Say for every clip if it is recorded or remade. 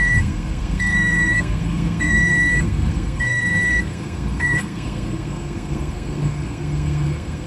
remade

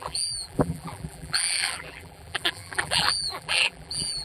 remade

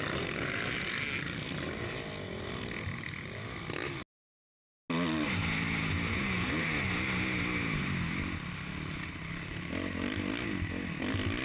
recorded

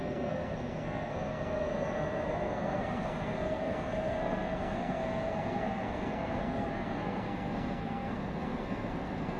remade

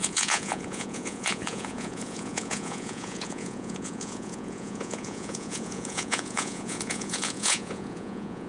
remade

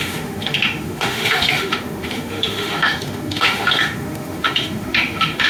remade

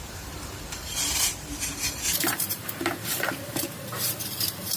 remade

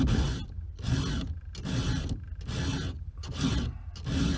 recorded